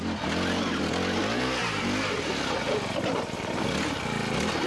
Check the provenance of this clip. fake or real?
real